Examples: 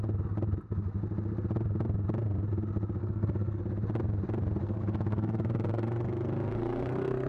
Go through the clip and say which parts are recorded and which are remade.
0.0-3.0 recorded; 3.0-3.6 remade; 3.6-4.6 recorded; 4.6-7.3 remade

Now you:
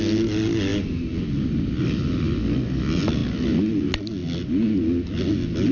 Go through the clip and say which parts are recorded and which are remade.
0.0-5.7 recorded

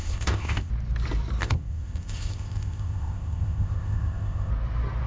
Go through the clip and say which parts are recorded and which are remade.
0.0-0.7 remade; 0.7-1.4 recorded; 1.4-4.5 remade; 4.5-5.1 recorded

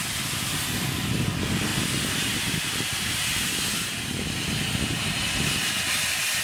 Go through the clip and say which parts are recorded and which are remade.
0.0-6.4 recorded

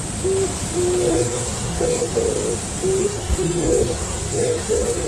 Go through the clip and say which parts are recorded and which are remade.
0.0-1.1 recorded; 1.1-2.1 remade; 2.1-3.0 recorded; 3.0-5.1 remade